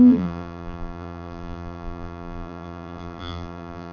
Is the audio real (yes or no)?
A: no